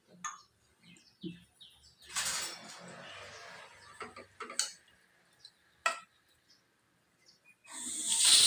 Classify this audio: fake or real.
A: real